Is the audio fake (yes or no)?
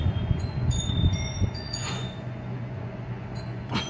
yes